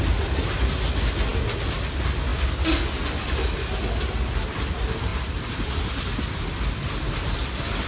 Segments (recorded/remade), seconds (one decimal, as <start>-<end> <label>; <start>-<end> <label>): 0.0-7.9 recorded